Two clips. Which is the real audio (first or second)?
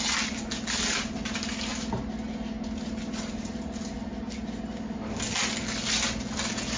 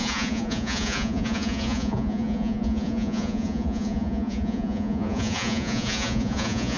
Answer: first